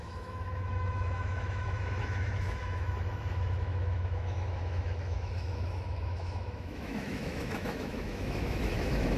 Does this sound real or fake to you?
fake